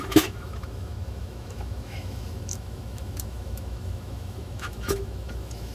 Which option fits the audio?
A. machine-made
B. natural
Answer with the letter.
A